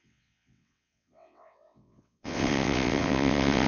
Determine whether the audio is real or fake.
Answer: fake